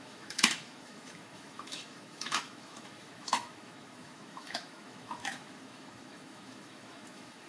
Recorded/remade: remade